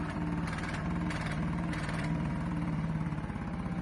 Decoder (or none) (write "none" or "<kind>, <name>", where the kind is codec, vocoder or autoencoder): vocoder, BigVGAN v2